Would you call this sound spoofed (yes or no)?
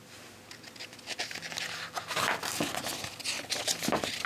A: no